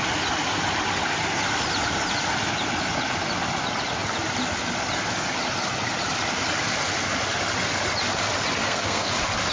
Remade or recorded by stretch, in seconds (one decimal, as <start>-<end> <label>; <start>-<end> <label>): 0.0-8.6 recorded; 8.6-9.1 remade; 9.1-9.5 recorded